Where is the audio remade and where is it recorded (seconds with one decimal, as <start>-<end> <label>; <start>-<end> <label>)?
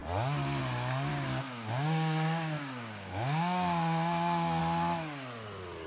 0.0-1.1 recorded; 1.1-4.6 remade; 4.6-5.9 recorded